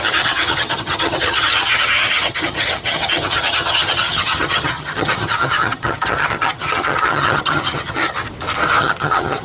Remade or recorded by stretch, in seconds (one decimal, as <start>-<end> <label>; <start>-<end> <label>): 0.0-8.2 remade; 8.2-8.8 recorded; 8.8-9.4 remade